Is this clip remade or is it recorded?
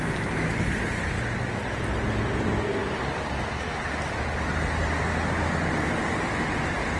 recorded